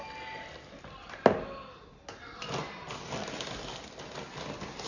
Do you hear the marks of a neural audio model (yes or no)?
no